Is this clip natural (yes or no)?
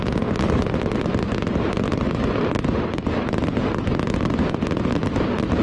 yes